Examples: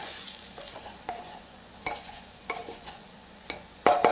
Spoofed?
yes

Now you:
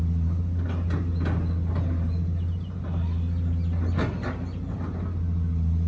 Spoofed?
no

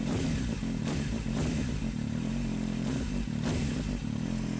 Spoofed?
yes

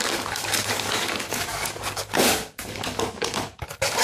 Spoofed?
yes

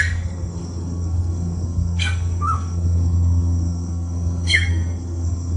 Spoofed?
yes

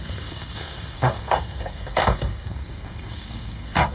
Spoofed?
yes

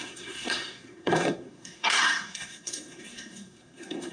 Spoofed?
yes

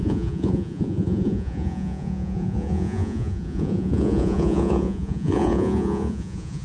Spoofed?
yes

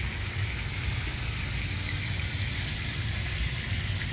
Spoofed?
no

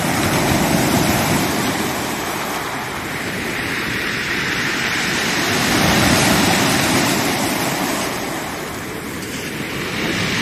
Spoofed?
yes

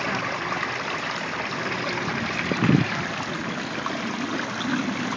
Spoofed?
no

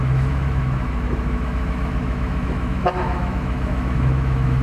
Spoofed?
yes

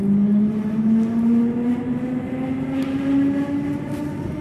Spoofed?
no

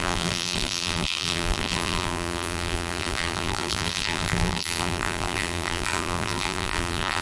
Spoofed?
yes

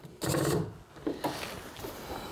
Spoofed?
no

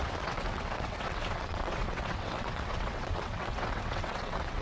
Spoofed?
yes